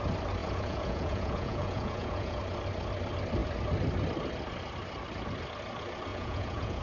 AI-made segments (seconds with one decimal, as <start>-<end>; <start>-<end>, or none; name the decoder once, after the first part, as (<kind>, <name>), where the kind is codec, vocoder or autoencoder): 0.4-2.4 (vocoder, Vocos); 6.1-6.8